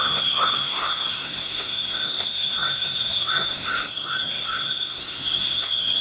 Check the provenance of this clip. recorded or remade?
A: remade